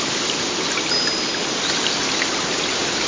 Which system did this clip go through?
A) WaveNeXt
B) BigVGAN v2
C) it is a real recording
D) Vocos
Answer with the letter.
C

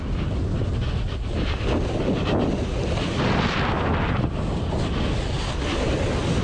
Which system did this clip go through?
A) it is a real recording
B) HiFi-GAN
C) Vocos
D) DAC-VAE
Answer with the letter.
A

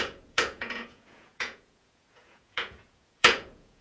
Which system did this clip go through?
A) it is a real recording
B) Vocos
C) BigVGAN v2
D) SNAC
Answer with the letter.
B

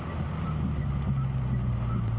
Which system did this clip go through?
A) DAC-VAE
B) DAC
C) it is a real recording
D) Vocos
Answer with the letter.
C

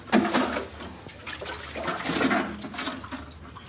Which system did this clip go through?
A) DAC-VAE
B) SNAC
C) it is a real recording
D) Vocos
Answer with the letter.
C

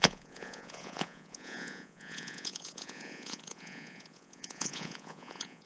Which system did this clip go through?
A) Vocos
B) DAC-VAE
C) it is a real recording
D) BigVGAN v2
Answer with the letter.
A